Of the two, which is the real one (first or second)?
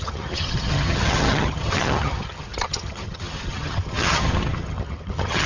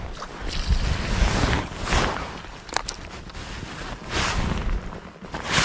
second